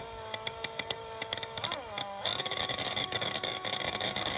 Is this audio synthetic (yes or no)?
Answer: yes